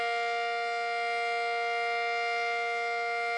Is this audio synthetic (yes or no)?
no